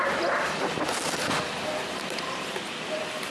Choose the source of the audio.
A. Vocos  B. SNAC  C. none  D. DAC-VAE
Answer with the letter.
C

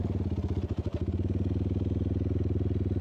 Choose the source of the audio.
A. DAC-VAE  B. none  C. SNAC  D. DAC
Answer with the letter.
B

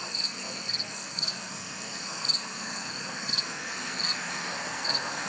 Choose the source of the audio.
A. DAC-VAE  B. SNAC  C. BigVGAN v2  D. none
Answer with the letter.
B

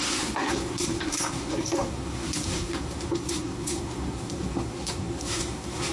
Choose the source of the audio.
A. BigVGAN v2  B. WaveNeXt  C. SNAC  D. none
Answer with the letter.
C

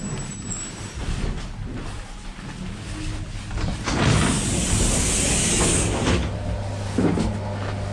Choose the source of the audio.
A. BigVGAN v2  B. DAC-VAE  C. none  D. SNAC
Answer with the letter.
C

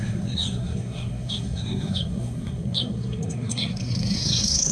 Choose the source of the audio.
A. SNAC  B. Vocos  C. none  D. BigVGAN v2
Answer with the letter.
A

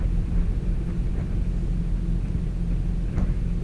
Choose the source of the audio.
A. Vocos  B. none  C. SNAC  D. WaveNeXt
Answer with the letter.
B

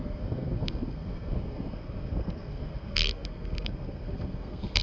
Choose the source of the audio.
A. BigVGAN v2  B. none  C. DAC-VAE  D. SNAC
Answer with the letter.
D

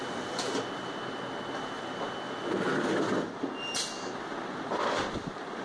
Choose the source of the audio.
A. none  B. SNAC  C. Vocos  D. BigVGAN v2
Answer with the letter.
A